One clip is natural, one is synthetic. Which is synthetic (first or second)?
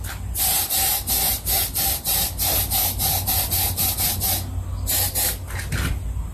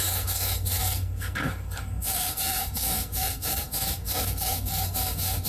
second